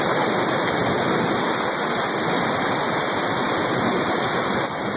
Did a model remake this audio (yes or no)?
no